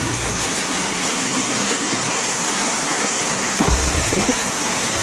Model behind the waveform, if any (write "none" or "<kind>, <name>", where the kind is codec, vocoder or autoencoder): codec, SNAC